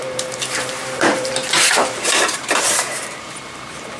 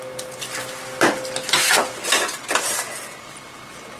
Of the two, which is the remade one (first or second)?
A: first